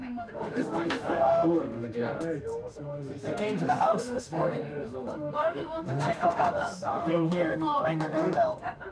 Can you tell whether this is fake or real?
fake